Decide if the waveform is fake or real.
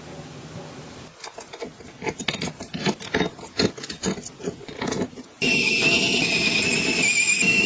real